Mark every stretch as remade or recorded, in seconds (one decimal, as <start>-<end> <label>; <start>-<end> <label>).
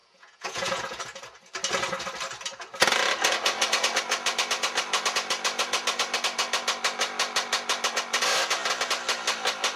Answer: 0.0-1.0 remade; 1.0-9.8 recorded